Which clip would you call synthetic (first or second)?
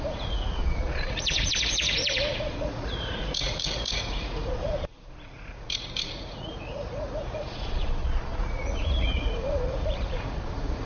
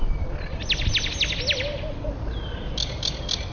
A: first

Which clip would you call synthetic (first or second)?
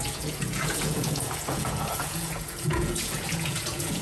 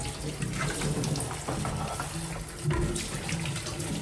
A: first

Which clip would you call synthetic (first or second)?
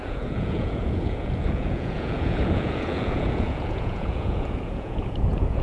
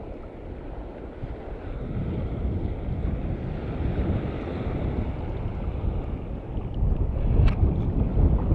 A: first